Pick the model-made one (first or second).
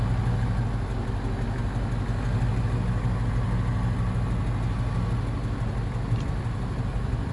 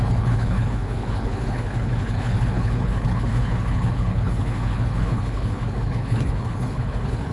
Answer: second